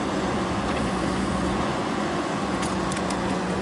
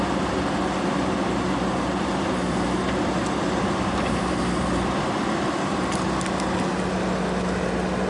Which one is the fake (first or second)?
first